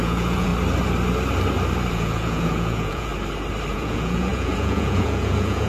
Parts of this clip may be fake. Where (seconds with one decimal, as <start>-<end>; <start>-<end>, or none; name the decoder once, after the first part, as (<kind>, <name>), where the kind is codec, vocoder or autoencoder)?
0.0-0.5 (vocoder, Vocos); 1.9-3.1; 3.7-5.7